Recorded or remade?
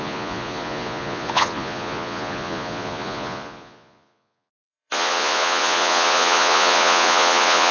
remade